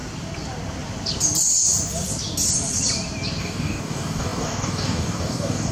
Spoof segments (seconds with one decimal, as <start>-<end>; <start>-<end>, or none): 3.4-5.7